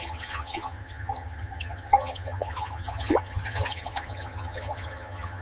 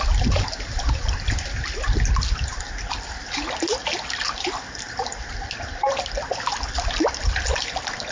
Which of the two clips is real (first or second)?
second